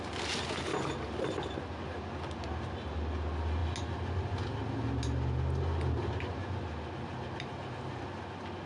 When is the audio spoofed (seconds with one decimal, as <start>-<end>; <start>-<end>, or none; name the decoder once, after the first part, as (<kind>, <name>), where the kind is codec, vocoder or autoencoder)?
none